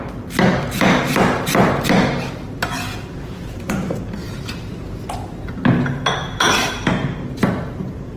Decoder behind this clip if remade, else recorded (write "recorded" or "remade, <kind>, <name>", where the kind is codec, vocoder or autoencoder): remade, vocoder, BigVGAN v2